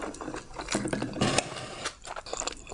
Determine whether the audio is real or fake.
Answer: real